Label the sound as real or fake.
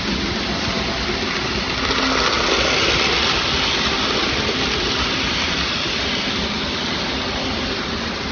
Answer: real